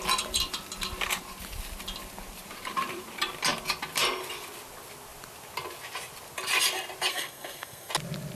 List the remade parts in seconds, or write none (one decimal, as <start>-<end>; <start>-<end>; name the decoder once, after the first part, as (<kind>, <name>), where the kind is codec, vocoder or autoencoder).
7.1-7.9 (codec, SNAC)